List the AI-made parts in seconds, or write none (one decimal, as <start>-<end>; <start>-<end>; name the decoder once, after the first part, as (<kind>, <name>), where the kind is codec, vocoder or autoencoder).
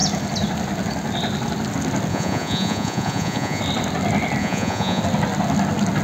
2.1-3.6 (vocoder, Vocos); 4.4-5.0